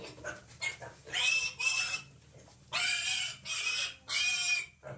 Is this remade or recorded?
recorded